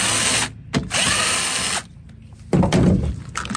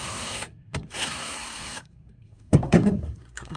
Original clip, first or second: first